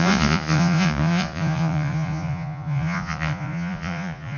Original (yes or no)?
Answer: no